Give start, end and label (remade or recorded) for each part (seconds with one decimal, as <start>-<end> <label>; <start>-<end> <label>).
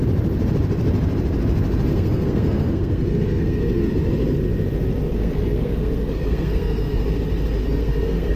0.0-1.9 recorded; 1.9-3.9 remade; 3.9-5.1 recorded; 5.1-7.0 remade; 7.0-7.6 recorded; 7.6-8.4 remade